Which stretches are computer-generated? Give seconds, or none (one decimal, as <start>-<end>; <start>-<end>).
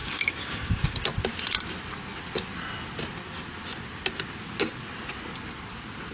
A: 0.0-1.0